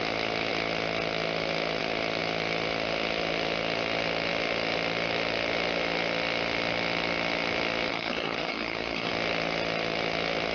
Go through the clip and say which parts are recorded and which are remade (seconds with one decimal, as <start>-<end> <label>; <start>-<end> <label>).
0.0-7.9 recorded; 7.9-9.1 remade; 9.1-10.5 recorded